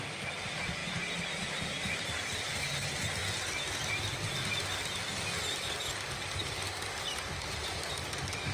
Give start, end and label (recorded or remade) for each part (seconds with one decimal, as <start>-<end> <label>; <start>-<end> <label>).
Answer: 0.0-0.8 remade; 0.8-1.5 recorded; 1.5-3.2 remade; 3.2-7.0 recorded; 7.0-8.5 remade